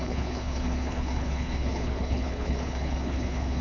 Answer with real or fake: fake